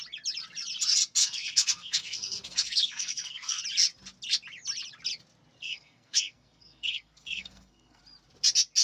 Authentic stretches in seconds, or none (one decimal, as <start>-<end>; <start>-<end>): 0.0-1.2; 3.6-5.6; 8.0-8.8

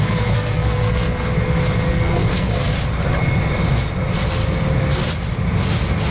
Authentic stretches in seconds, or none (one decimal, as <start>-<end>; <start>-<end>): 1.3-1.9; 2.7-6.1

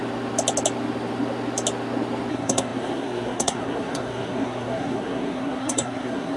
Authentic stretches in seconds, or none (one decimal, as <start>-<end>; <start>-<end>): 0.0-2.3

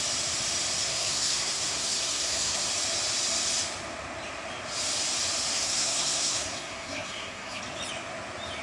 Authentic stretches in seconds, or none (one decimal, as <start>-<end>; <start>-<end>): 0.0-0.8; 2.6-5.5; 7.6-8.6